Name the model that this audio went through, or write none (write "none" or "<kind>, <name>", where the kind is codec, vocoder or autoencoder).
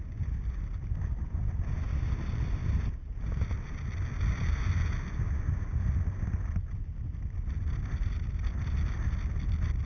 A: none